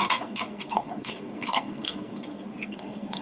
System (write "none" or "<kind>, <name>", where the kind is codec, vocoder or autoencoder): codec, SNAC